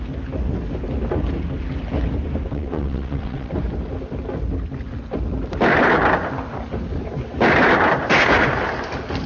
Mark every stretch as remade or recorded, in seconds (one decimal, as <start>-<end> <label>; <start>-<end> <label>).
0.0-2.5 recorded; 2.5-3.5 remade; 3.5-9.3 recorded